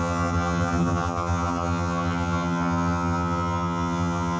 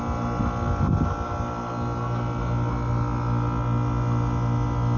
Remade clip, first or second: first